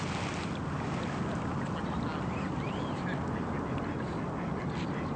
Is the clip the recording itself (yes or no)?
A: yes